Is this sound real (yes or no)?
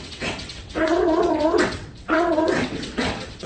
no